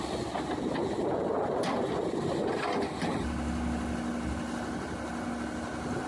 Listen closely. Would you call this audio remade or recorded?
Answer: recorded